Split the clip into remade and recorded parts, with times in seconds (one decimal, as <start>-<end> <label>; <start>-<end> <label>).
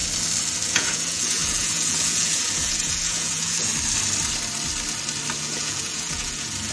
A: 0.0-0.7 recorded; 0.7-3.7 remade; 3.7-5.4 recorded; 5.4-6.7 remade